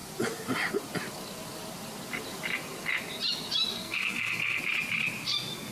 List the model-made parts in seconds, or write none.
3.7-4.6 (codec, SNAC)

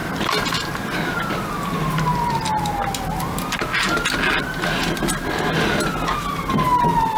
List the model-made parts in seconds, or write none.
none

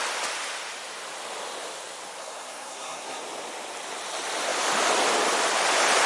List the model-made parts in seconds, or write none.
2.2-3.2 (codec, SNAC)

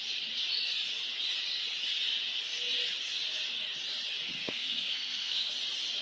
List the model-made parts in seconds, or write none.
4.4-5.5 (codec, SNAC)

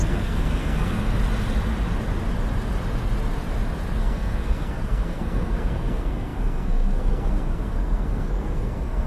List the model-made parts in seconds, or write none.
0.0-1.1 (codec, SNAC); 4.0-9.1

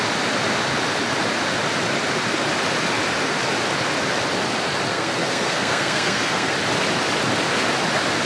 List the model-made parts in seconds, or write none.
4.9-6.5 (codec, SNAC)

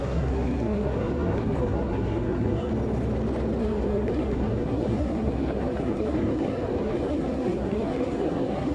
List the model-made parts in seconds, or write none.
0.0-2.7 (codec, SNAC); 3.6-8.7

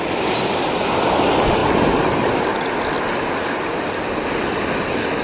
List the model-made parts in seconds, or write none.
none